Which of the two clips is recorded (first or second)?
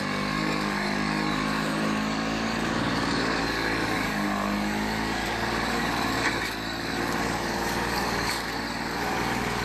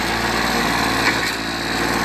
second